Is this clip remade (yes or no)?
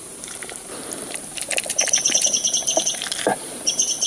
yes